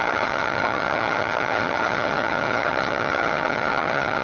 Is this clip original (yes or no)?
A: no